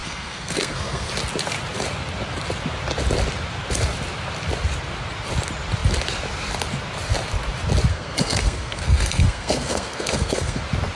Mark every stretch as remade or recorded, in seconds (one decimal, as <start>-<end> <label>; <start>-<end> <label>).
0.0-1.1 remade; 1.1-7.9 recorded; 7.9-10.6 remade; 10.6-11.0 recorded